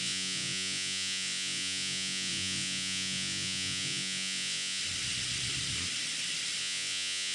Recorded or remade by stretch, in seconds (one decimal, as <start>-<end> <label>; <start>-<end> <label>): 0.0-4.8 remade; 4.8-6.6 recorded; 6.6-7.3 remade